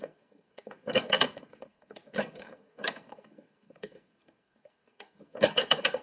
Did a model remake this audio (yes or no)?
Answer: yes